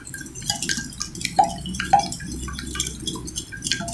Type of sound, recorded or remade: recorded